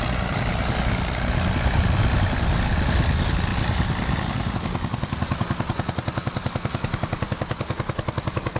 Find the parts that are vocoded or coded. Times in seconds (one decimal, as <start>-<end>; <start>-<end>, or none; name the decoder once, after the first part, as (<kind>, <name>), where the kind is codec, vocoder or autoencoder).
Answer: none